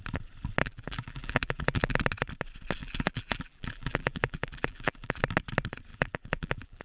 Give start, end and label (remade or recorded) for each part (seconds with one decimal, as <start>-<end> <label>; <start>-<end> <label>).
0.0-0.6 recorded; 0.6-2.0 remade; 2.0-2.8 recorded; 2.8-5.2 remade; 5.2-5.9 recorded; 5.9-6.8 remade